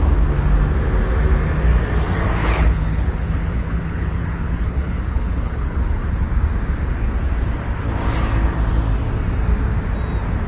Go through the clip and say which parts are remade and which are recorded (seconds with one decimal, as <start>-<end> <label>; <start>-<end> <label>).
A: 0.0-2.4 recorded; 2.4-6.2 remade; 6.2-10.5 recorded